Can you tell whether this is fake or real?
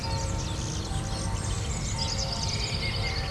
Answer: real